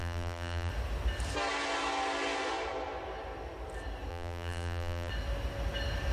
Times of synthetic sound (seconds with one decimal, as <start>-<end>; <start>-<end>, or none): 0.0-0.7; 4.1-5.1